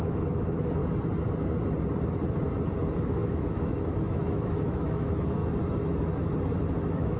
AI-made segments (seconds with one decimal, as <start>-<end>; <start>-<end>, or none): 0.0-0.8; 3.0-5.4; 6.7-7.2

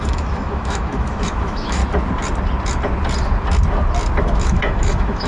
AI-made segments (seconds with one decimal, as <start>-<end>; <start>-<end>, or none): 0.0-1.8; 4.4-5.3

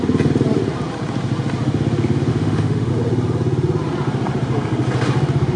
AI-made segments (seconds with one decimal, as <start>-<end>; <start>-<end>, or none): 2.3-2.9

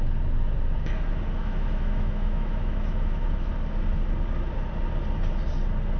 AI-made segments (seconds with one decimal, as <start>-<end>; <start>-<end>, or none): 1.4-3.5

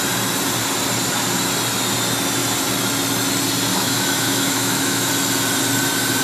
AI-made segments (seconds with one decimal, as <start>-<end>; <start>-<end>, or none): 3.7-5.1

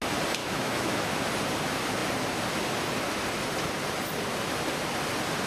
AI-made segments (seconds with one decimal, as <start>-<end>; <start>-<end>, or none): 0.4-1.1